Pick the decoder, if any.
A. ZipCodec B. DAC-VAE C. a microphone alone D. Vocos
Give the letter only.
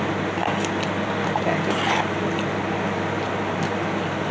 C